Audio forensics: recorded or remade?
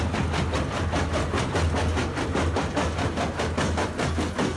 recorded